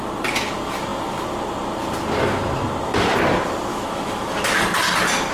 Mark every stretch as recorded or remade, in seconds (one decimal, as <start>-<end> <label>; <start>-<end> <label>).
0.0-3.7 recorded; 3.7-4.6 remade; 4.6-5.3 recorded